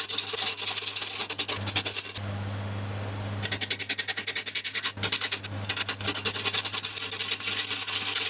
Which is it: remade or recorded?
recorded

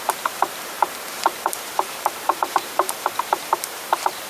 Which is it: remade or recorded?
remade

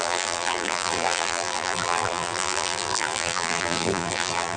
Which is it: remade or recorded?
remade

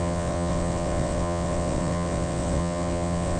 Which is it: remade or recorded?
remade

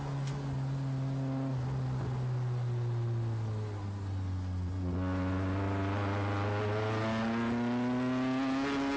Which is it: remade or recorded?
recorded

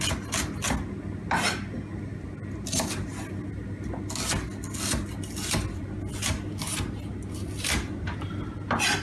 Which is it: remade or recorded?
recorded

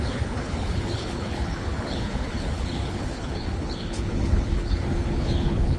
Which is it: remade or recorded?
remade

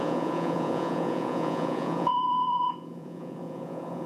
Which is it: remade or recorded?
remade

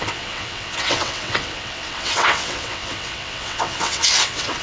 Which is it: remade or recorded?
remade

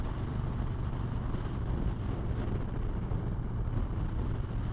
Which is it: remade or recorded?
recorded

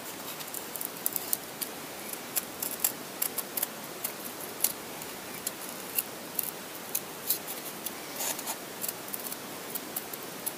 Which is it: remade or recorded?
recorded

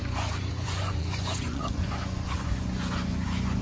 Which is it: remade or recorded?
remade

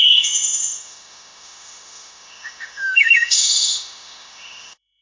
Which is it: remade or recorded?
remade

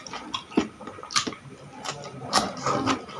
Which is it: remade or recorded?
remade